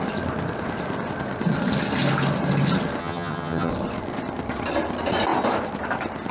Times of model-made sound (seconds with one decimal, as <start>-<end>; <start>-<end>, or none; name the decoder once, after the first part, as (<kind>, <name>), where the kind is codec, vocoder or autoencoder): 3.0-3.7 (vocoder, HiFi-GAN)